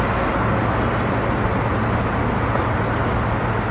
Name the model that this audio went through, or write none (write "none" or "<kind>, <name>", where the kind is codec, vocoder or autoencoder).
none